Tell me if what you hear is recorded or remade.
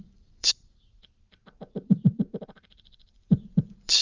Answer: remade